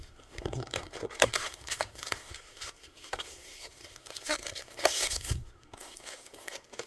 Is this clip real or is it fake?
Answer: fake